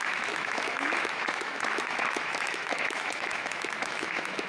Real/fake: fake